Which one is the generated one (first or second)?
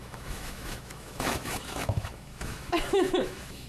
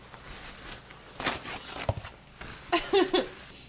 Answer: first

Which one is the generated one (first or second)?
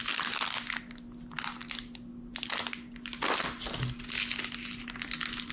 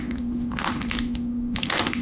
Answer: second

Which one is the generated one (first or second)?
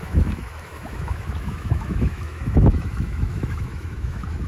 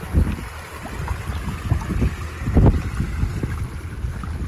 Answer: first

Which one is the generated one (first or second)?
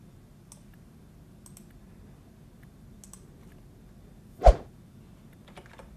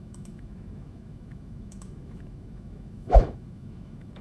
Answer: second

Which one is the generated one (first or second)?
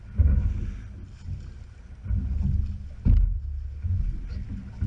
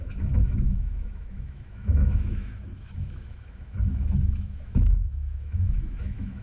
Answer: second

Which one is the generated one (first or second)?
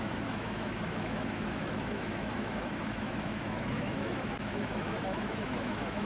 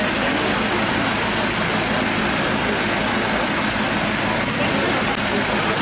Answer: first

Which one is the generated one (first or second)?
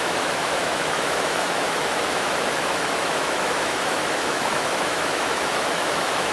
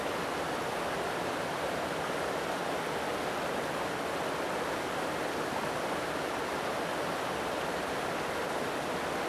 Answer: first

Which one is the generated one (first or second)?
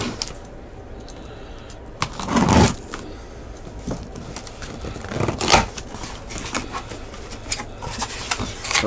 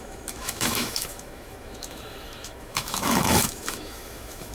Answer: second